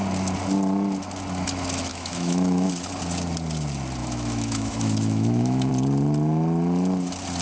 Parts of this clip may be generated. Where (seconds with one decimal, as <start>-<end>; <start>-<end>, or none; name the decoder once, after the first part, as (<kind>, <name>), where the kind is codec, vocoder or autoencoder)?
1.9-2.7 (autoencoder, DAC-VAE); 4.0-5.7